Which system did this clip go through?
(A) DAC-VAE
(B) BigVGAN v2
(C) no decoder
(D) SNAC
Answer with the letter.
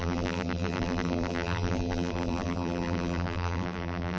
B